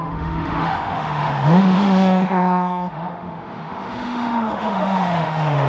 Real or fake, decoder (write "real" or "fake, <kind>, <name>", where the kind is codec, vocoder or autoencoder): fake, autoencoder, DAC-VAE